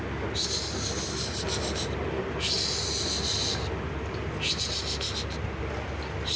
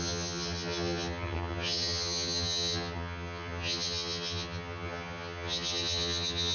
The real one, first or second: first